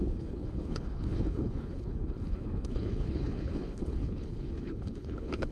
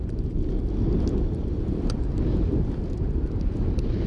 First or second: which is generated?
first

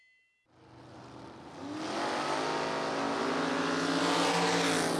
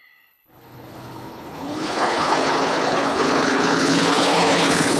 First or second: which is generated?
second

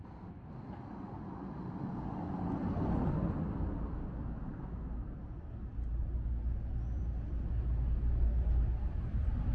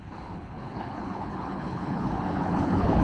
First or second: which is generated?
second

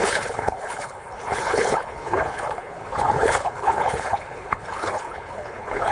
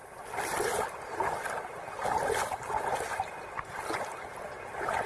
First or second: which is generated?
first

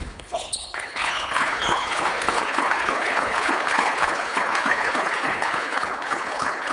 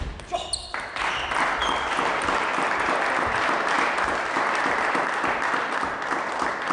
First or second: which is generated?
first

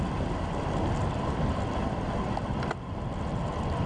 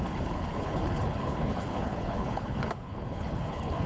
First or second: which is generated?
second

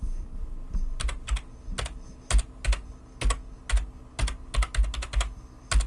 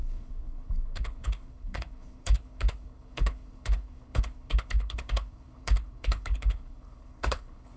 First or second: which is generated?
second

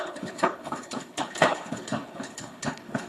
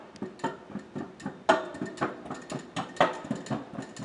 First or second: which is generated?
first